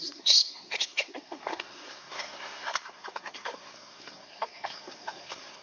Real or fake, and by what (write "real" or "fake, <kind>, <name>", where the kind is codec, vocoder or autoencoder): fake, codec, SNAC